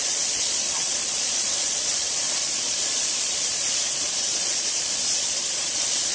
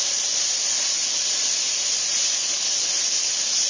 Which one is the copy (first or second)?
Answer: first